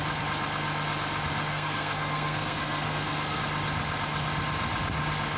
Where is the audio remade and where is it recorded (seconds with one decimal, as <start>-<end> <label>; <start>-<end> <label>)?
0.0-1.5 recorded; 1.5-3.4 remade; 3.4-5.4 recorded